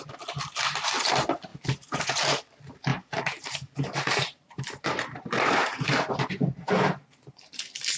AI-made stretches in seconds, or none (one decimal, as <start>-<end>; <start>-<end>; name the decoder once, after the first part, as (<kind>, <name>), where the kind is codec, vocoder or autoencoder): 2.9-7.6 (vocoder, BigVGAN v2)